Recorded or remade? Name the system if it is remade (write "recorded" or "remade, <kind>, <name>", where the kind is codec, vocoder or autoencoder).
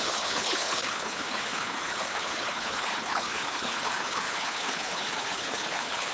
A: remade, codec, HILCodec